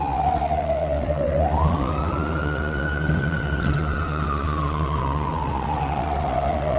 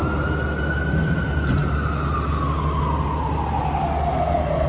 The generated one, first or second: first